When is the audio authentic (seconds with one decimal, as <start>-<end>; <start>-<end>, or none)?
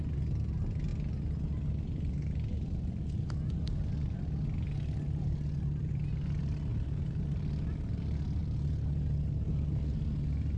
0.0-6.7; 7.2-10.6